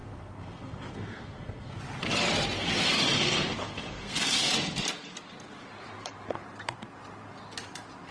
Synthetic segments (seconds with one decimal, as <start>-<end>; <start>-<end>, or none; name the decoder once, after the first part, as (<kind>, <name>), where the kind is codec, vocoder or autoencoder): 0.0-1.8 (codec, SNAC); 3.6-4.5